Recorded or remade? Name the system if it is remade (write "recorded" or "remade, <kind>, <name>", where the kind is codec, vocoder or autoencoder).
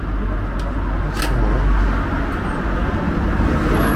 recorded